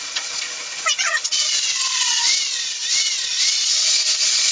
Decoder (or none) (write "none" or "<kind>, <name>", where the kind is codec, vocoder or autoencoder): vocoder, Vocos